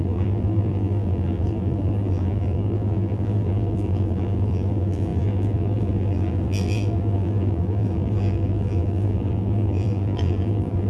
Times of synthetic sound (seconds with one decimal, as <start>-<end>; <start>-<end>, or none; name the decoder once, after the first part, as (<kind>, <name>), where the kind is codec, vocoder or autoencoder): 0.0-10.9 (vocoder, BigVGAN v2)